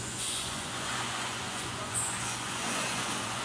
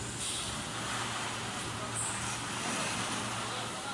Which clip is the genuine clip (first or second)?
second